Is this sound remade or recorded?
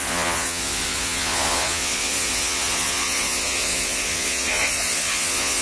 remade